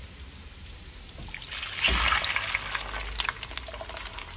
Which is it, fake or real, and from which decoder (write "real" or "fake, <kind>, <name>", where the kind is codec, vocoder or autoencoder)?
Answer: real